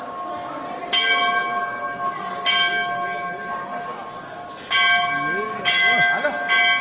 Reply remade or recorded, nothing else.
recorded